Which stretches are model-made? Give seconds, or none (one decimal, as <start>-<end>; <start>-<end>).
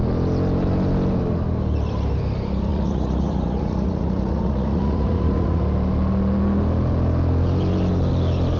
2.7-5.6